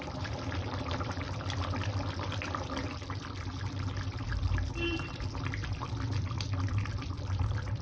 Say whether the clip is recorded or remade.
remade